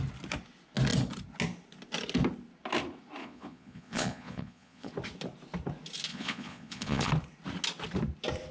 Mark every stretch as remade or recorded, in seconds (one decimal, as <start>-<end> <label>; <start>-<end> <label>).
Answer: 0.0-3.2 recorded; 3.2-4.9 remade; 4.9-6.1 recorded; 6.1-7.1 remade; 7.1-8.5 recorded